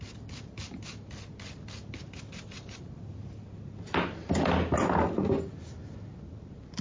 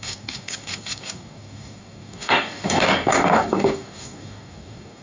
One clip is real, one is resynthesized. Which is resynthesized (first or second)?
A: second